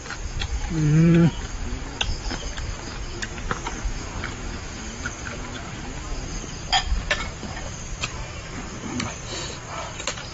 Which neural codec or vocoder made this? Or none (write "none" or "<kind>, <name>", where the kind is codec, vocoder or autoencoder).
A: vocoder, BigVGAN v2